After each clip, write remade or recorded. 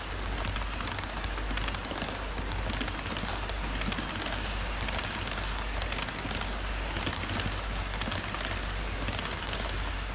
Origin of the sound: recorded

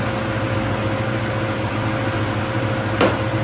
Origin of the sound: recorded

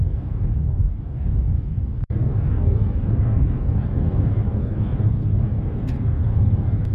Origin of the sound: remade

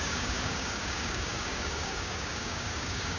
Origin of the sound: remade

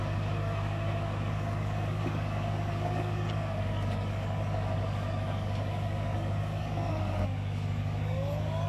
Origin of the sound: remade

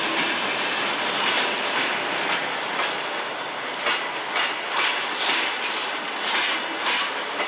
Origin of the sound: recorded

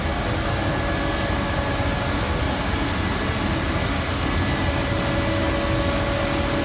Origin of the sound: recorded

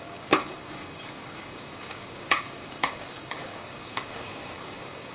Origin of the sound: remade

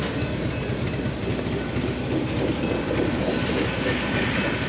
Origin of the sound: recorded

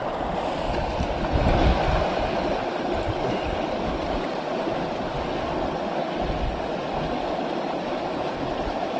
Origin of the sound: recorded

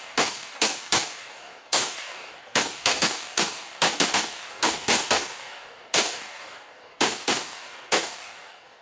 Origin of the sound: remade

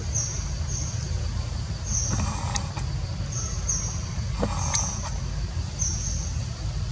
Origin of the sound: recorded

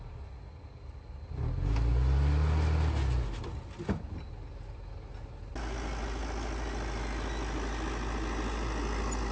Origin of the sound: recorded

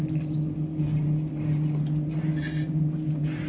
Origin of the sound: recorded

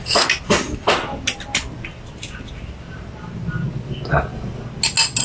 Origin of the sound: recorded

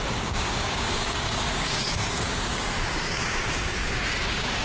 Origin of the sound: remade